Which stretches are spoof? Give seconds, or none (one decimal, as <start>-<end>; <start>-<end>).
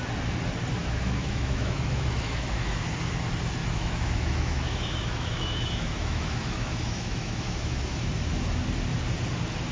0.8-2.9; 3.6-8.1